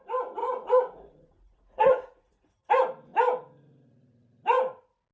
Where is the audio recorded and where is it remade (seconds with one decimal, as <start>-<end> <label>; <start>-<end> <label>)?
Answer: 0.0-0.4 recorded; 0.4-2.7 remade; 2.7-5.1 recorded

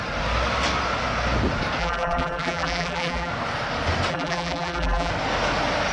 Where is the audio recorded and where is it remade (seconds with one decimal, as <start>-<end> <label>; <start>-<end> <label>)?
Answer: 0.0-1.8 recorded; 1.8-3.3 remade; 3.3-4.1 recorded; 4.1-5.1 remade; 5.1-5.9 recorded

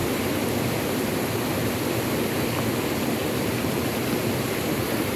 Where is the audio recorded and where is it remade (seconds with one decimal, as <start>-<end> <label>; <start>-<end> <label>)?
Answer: 0.0-5.2 recorded

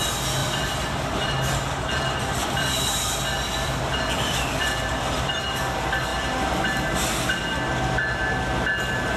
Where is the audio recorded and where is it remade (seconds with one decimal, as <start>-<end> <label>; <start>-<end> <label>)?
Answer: 0.0-0.4 recorded; 0.4-5.6 remade; 5.6-9.2 recorded

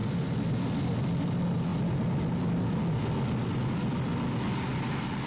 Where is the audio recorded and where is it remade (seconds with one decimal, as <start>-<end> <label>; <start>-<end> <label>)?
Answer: 0.0-1.0 remade; 1.0-5.3 recorded

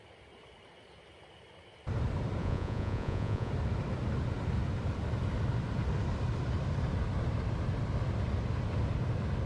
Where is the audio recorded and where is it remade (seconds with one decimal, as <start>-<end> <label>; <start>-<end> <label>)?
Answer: 0.0-2.4 recorded; 2.4-3.5 remade; 3.5-9.5 recorded

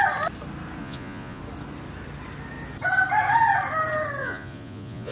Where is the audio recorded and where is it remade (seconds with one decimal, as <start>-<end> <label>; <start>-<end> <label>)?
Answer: 0.0-0.8 recorded; 0.8-1.4 remade; 1.4-4.2 recorded; 4.2-5.1 remade